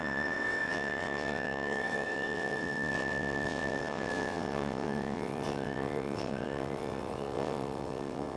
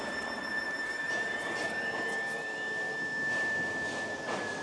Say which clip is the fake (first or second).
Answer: first